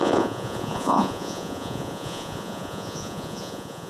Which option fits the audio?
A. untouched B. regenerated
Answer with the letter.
B